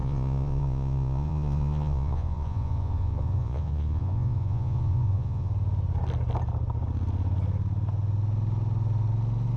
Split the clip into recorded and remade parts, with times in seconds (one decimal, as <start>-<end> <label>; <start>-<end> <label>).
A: 0.0-5.5 remade; 5.5-9.6 recorded